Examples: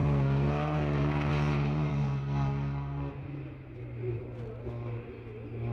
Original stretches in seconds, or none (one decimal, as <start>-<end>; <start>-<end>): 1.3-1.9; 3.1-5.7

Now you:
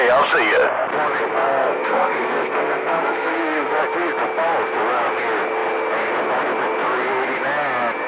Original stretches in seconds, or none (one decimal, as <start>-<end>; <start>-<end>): 0.0-1.3; 3.8-8.1

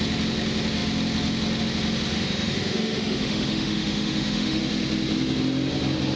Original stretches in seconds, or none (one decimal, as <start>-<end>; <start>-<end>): 0.0-2.1; 4.6-6.2

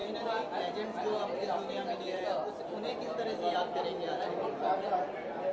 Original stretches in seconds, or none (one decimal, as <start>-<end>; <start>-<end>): 0.5-1.4; 3.6-5.5